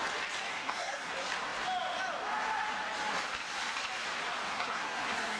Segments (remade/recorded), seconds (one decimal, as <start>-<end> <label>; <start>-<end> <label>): 0.0-0.5 recorded; 0.5-1.1 remade; 1.1-4.5 recorded; 4.5-5.4 remade